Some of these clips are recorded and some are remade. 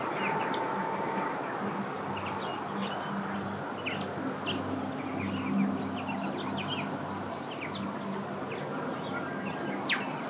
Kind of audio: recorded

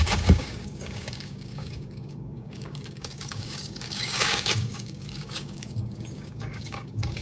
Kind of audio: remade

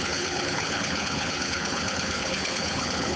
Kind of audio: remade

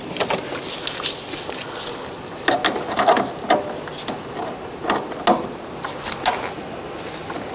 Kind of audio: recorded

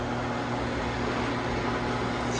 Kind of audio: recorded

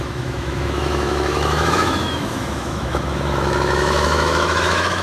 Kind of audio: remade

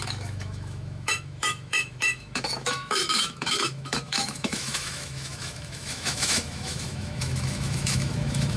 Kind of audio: remade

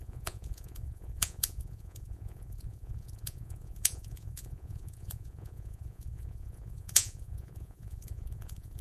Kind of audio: remade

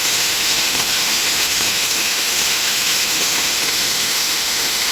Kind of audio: remade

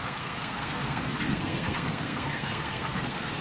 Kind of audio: remade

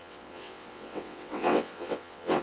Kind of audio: remade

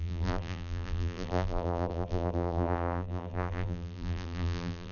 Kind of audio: remade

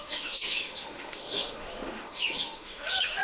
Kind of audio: remade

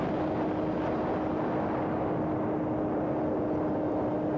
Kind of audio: recorded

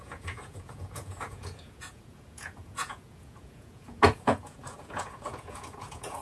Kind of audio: remade